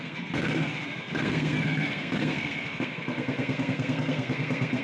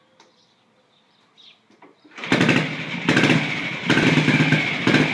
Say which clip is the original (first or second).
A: second